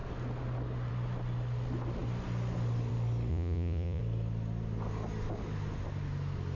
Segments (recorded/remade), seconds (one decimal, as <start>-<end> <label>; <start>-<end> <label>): 0.0-3.3 recorded; 3.3-4.0 remade; 4.0-6.5 recorded